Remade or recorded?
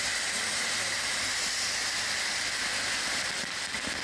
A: recorded